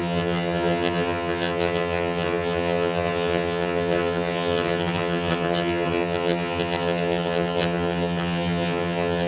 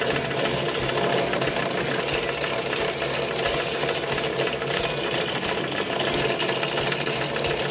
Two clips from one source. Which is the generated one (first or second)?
first